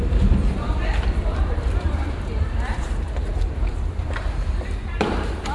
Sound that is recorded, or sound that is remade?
remade